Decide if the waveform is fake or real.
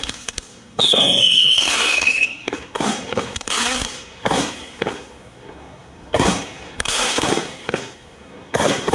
fake